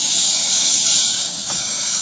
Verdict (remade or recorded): remade